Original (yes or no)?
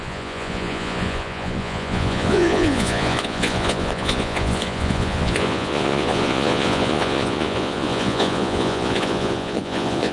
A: no